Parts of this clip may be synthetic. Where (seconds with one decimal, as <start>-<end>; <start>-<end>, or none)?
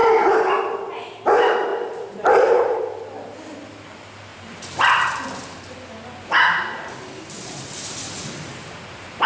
1.7-2.8; 4.3-5.2